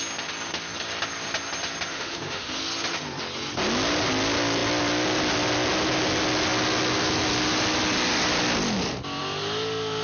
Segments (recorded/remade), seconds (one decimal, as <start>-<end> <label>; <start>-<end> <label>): 0.0-1.9 recorded; 1.9-2.6 remade; 2.6-10.0 recorded